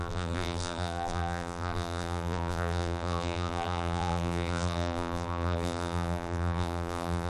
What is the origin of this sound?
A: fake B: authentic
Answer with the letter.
A